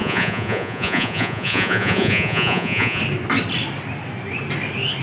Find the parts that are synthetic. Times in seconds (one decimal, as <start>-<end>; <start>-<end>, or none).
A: 0.0-3.0